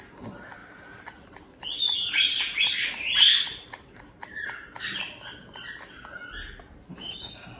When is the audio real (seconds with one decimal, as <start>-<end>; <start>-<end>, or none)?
0.0-0.6; 4.0-7.6